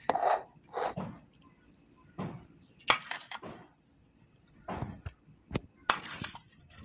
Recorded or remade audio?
recorded